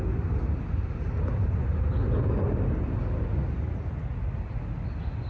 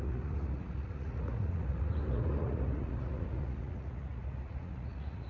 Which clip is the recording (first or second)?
first